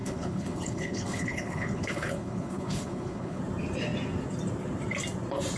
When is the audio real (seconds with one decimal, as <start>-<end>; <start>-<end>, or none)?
3.4-5.6